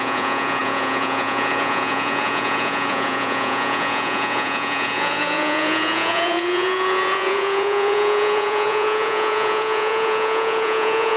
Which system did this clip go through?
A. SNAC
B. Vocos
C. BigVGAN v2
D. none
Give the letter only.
B